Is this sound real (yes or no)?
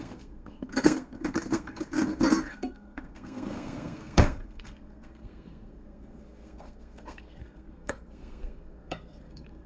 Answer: no